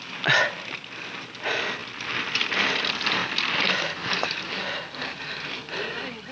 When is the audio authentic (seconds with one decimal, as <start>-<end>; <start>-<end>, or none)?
0.0-1.8; 2.8-3.2; 4.5-6.3